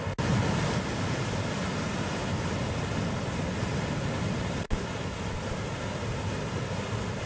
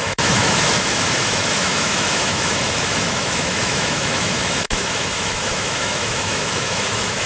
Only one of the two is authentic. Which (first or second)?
first